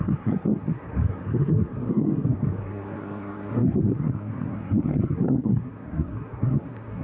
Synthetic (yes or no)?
yes